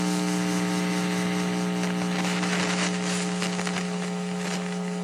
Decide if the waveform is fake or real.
real